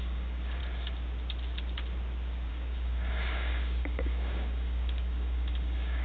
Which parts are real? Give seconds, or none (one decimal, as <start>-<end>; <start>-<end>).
0.6-2.5